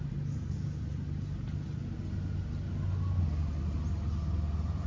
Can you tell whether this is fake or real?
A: real